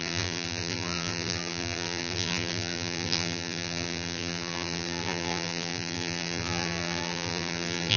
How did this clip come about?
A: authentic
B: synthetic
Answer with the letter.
B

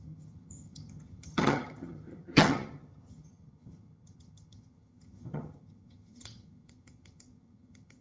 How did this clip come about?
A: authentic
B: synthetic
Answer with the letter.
B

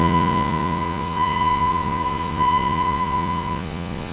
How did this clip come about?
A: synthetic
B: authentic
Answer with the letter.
A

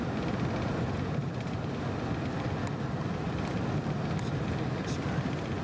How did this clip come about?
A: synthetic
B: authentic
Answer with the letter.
B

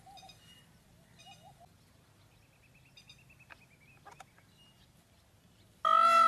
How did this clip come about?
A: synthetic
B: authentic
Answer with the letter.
B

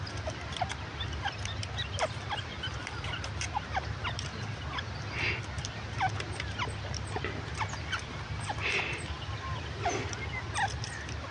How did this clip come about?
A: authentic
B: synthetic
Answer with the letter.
A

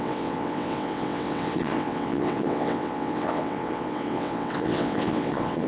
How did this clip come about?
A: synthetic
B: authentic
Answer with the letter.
A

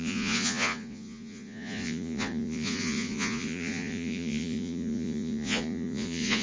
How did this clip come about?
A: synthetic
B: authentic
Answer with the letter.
A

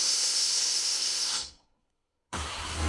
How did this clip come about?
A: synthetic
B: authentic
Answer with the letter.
A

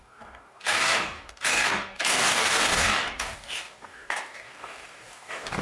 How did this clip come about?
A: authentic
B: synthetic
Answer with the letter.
B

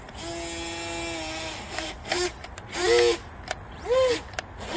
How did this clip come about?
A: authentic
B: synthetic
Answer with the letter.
A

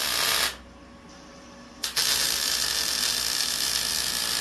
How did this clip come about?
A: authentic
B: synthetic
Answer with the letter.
A